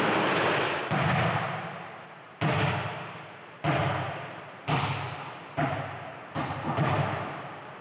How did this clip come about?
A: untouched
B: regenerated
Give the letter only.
A